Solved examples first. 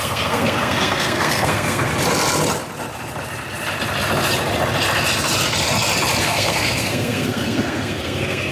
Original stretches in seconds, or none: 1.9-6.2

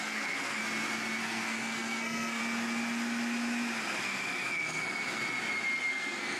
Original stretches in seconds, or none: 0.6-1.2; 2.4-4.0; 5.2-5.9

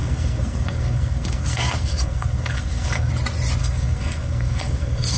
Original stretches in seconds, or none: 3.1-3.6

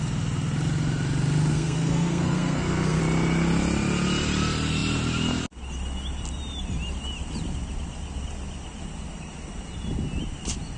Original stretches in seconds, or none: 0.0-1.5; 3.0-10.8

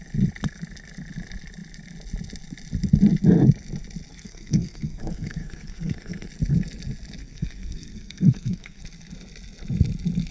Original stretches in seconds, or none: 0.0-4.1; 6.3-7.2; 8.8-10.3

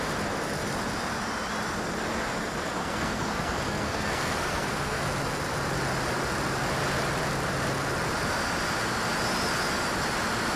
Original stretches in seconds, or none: 0.0-2.8; 5.0-10.6